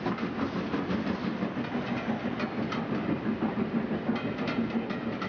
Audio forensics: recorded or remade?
recorded